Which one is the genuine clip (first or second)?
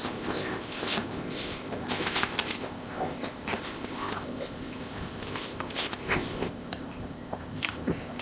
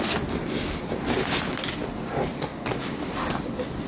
second